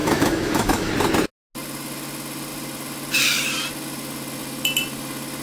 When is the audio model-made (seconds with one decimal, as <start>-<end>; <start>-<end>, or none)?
0.0-0.9